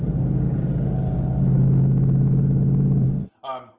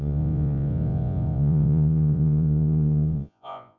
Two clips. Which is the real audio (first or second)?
first